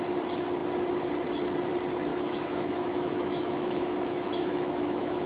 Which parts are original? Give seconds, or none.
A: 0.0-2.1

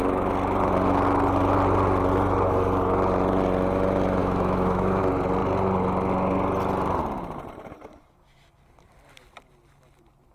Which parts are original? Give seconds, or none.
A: 0.0-4.2; 5.0-10.3

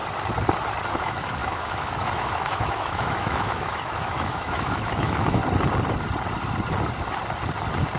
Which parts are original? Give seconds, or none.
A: 0.0-0.9; 5.4-8.0

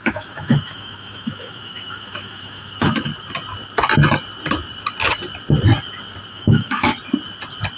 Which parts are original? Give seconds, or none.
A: 3.1-6.3; 6.9-7.8

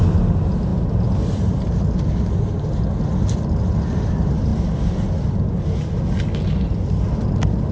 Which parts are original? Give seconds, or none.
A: 0.0-7.7

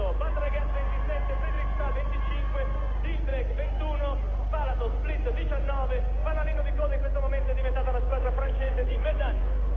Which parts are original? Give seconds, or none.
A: 0.0-8.1; 9.4-9.8